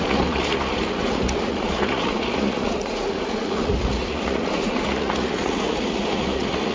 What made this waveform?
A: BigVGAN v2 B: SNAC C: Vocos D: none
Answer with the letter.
C